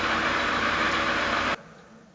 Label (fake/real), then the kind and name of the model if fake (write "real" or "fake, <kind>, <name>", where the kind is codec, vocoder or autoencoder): real